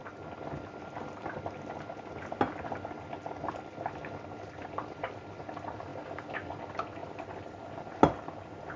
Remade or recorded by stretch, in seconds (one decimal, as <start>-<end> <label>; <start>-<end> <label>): 0.0-7.0 recorded; 7.0-7.6 remade; 7.6-8.8 recorded